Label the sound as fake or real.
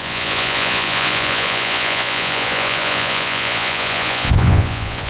fake